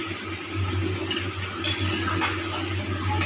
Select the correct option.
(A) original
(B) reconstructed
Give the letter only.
A